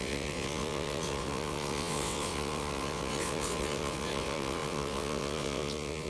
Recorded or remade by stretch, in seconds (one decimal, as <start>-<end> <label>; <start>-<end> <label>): 0.0-6.1 remade